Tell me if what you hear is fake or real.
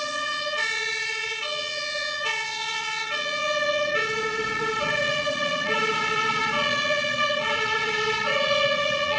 fake